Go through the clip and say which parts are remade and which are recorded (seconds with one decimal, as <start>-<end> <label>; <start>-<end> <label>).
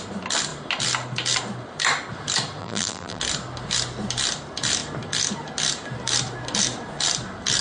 0.0-2.6 recorded; 2.6-3.2 remade; 3.2-7.6 recorded